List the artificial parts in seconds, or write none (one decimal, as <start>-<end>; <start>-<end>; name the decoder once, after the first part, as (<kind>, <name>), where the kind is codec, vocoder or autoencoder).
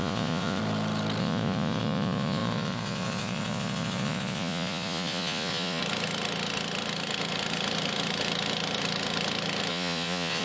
0.0-0.6 (vocoder, Vocos); 1.2-5.8; 9.7-10.4